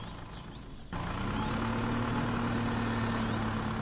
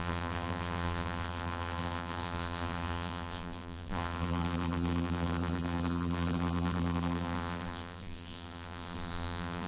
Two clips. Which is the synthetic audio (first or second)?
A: second